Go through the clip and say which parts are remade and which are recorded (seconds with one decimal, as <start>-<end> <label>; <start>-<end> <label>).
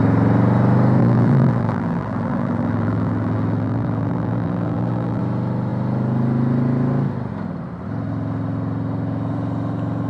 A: 0.0-1.0 recorded; 1.0-5.2 remade; 5.2-10.1 recorded